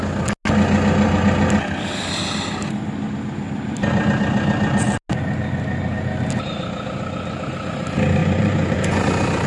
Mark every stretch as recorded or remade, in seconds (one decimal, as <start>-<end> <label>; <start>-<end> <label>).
0.0-8.2 recorded; 8.2-9.0 remade; 9.0-9.5 recorded